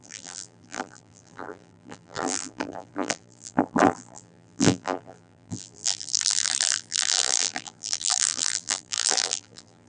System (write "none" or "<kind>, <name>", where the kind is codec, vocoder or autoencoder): vocoder, BigVGAN v2